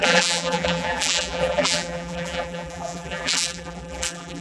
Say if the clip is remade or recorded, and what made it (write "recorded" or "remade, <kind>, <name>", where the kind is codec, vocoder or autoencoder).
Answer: remade, vocoder, BigVGAN v2